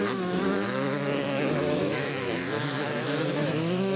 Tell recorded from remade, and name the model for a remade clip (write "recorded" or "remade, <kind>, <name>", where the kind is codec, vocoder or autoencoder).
remade, autoencoder, DAC-VAE